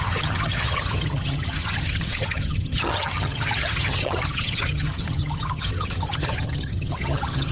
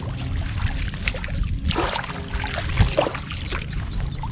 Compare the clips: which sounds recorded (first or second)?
second